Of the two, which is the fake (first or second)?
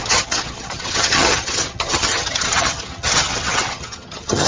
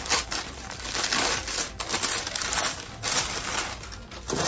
first